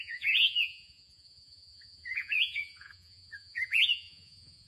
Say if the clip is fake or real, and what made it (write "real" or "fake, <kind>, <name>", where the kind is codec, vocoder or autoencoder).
fake, vocoder, Vocos